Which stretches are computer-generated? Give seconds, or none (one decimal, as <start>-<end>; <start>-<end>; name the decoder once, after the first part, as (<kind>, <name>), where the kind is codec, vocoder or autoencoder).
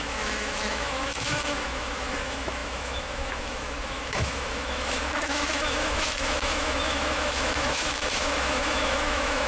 0.0-9.5 (autoencoder, DAC-VAE)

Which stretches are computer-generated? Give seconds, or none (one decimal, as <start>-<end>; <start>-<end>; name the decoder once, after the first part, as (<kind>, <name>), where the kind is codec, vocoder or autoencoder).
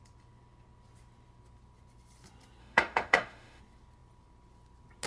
2.6-3.6 (autoencoder, DAC-VAE)